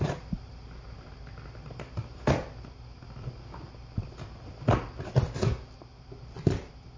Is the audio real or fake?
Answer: real